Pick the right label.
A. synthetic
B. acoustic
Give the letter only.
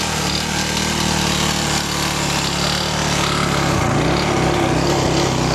B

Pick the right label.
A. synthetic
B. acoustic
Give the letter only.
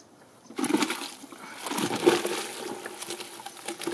B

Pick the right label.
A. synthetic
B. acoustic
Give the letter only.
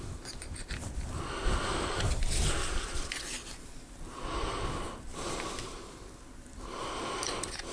B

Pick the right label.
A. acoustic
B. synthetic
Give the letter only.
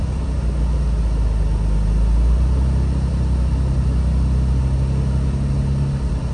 A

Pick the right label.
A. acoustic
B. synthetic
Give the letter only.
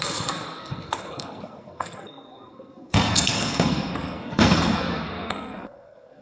B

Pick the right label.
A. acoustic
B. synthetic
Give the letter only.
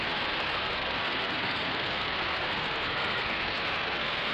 B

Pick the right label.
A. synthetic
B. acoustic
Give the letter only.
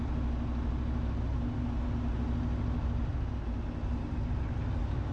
B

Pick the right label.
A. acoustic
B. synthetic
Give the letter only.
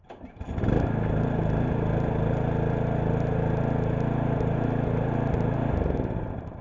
A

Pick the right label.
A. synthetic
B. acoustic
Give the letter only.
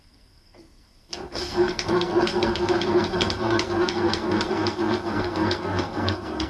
A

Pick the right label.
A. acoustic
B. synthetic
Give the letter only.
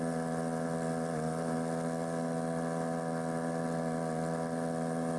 A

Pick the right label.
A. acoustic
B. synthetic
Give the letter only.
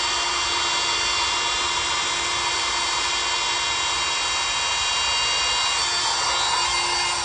A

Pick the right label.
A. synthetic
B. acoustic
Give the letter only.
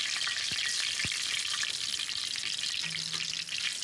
B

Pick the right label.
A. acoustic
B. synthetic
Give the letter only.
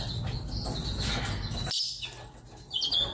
A